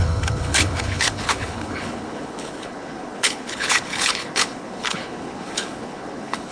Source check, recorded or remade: remade